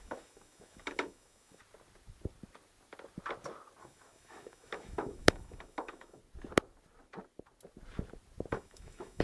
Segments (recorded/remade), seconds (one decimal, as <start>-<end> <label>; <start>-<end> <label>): 0.0-1.6 remade; 1.6-3.8 recorded; 3.8-6.2 remade; 6.2-8.5 recorded; 8.5-9.2 remade